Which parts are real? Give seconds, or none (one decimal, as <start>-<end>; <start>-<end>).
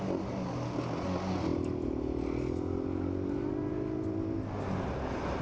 0.0-5.4